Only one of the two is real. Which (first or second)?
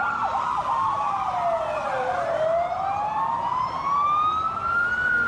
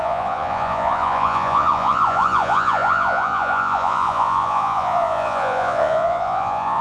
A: first